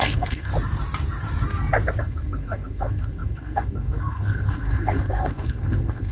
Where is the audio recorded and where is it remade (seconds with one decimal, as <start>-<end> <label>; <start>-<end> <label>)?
0.0-0.5 remade; 0.5-2.0 recorded; 2.0-6.1 remade